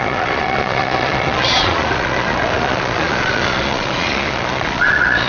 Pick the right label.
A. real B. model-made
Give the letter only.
B